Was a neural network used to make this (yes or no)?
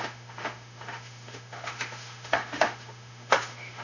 yes